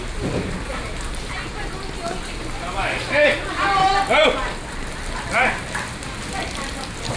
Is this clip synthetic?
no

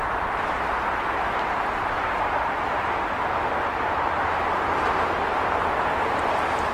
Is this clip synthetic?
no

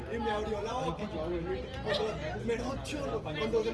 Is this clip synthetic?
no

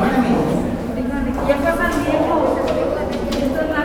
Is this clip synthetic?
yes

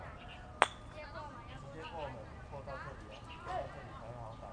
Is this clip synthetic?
no